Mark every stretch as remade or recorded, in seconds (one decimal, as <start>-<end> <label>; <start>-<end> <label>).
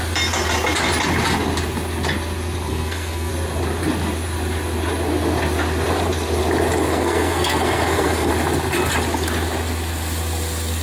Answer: 0.0-2.7 recorded; 2.7-3.3 remade; 3.3-6.9 recorded; 6.9-8.3 remade; 8.3-10.8 recorded